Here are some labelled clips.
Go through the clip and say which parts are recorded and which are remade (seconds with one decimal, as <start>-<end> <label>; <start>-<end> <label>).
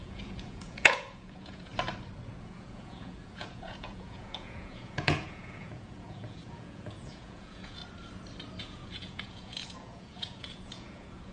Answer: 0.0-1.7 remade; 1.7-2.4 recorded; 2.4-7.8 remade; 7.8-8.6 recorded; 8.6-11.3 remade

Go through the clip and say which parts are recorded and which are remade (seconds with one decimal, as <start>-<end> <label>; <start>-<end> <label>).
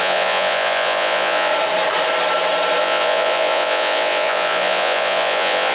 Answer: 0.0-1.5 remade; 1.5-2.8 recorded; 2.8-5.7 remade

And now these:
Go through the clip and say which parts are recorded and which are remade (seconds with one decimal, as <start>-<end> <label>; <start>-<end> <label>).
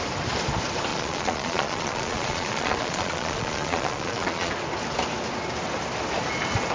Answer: 0.0-0.9 recorded; 0.9-4.5 remade; 4.5-6.7 recorded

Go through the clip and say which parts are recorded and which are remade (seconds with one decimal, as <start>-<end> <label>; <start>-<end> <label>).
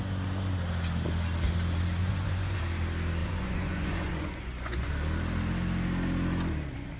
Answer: 0.0-2.0 recorded; 2.0-2.6 remade; 2.6-3.2 recorded; 3.2-4.9 remade; 4.9-7.0 recorded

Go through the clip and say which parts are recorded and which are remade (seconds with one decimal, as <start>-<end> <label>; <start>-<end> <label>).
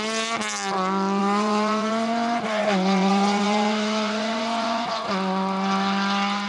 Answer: 0.0-1.2 recorded; 1.2-5.1 remade; 5.1-6.5 recorded